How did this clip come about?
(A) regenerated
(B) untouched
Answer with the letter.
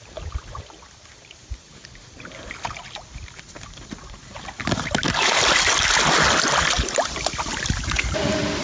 B